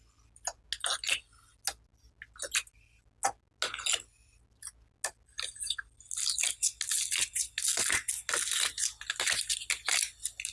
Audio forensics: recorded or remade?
recorded